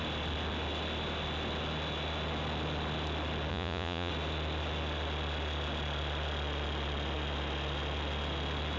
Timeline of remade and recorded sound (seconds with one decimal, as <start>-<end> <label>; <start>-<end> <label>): 0.0-3.5 recorded; 3.5-4.1 remade; 4.1-8.8 recorded